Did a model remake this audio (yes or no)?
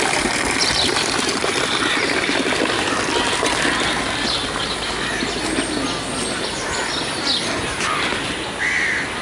no